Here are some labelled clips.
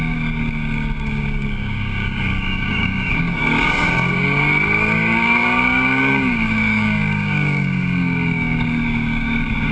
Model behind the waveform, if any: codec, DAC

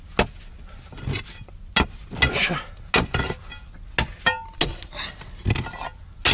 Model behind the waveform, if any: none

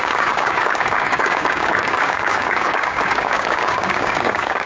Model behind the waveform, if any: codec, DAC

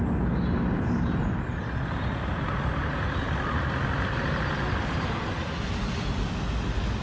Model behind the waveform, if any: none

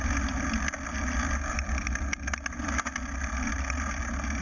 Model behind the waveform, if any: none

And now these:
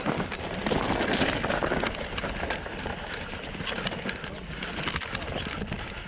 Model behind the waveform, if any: none